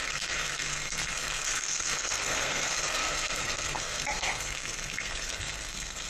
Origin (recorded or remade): remade